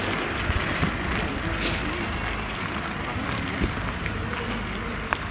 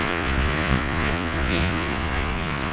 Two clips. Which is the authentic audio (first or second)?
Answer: first